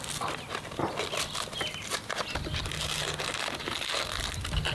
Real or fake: real